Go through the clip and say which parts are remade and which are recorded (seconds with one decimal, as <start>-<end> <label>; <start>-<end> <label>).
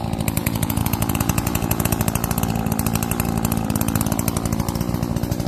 0.0-0.4 recorded; 0.4-2.0 remade; 2.0-5.5 recorded